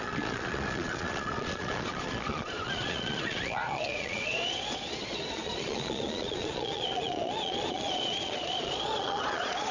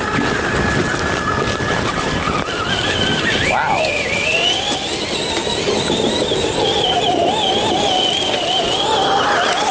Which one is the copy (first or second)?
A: first